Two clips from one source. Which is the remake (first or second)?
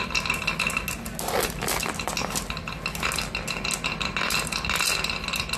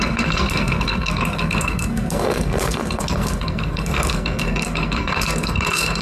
second